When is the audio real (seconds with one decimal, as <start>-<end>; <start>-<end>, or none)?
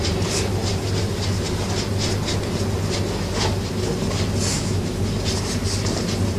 0.0-4.5; 5.0-6.4